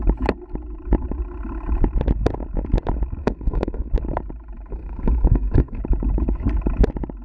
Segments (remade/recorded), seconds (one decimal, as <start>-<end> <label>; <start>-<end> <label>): 0.0-3.2 recorded; 3.2-3.9 remade; 3.9-4.7 recorded; 4.7-5.8 remade; 5.8-7.2 recorded